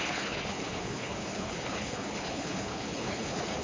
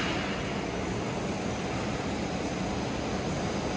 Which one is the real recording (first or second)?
second